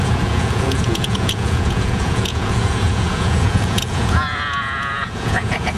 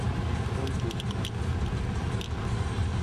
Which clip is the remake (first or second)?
first